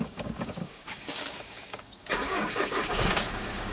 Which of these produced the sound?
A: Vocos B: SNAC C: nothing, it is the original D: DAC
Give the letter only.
D